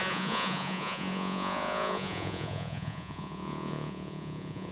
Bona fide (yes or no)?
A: no